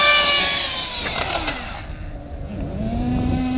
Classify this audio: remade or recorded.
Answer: recorded